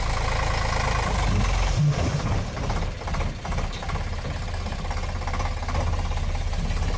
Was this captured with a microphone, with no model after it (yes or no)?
yes